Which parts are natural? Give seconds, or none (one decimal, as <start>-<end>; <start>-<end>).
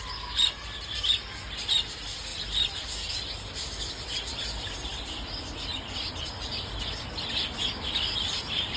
0.0-8.8